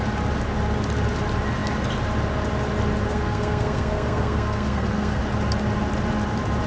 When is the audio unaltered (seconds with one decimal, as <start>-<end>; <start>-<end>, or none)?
0.0-3.1; 5.2-6.7